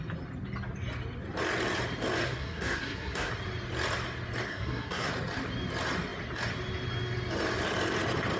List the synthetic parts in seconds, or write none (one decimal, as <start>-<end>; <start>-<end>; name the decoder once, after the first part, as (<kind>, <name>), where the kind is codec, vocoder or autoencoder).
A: 2.2-3.3 (codec, SNAC); 4.5-5.1